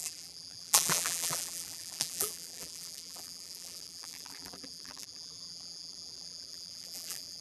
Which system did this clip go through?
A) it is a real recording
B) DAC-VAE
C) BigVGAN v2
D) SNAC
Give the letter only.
C